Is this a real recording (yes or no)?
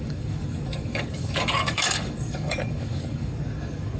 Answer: no